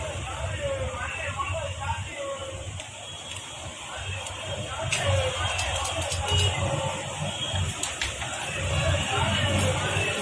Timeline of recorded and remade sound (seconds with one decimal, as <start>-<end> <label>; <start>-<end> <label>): 0.0-10.2 recorded